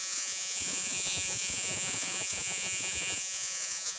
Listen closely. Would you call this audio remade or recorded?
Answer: remade